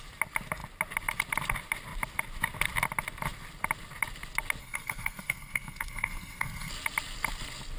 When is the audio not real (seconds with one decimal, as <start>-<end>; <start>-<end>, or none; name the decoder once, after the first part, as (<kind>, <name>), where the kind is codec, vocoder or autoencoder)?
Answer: 4.6-6.7 (codec, SNAC)